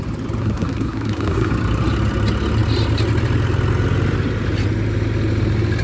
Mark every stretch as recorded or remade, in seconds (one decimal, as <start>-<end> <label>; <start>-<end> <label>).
0.0-0.4 recorded; 0.4-1.5 remade; 1.5-5.8 recorded